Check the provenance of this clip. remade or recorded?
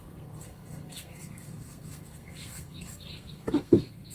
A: remade